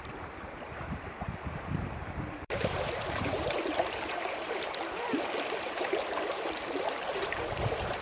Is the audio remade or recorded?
remade